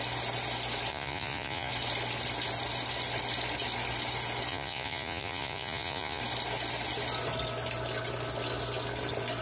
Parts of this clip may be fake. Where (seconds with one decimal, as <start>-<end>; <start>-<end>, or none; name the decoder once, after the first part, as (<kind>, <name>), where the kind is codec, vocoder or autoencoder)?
0.9-1.7 (vocoder, Vocos); 4.5-6.2